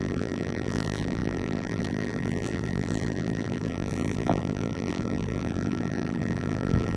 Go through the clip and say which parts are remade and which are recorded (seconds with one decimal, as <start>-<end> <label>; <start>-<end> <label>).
0.0-7.0 remade